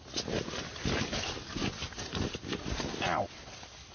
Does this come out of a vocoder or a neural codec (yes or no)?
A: no